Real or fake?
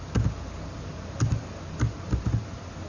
real